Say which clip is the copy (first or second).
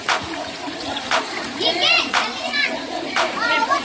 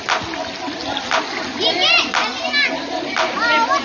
first